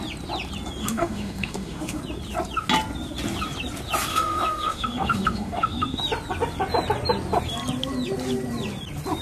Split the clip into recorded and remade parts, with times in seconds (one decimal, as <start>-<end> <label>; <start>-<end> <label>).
0.0-0.8 recorded; 0.8-2.0 remade; 2.0-4.1 recorded; 4.1-6.0 remade; 6.0-9.2 recorded